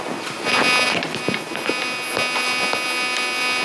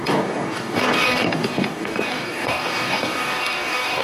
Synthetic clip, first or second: second